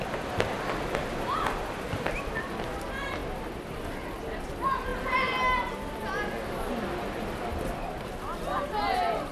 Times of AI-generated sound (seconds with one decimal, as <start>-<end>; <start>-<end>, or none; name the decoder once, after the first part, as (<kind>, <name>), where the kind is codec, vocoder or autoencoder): none